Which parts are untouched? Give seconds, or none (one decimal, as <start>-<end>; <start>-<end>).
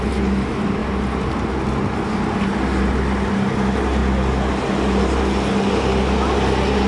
0.0-6.9